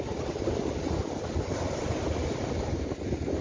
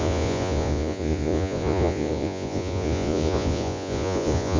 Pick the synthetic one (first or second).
second